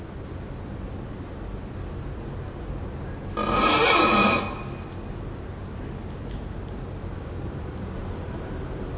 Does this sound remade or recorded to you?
recorded